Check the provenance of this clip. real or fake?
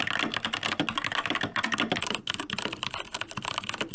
real